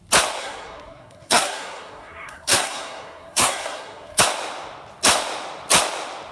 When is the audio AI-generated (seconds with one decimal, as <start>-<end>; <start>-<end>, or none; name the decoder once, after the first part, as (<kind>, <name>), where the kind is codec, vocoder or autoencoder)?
0.4-4.2 (codec, SNAC)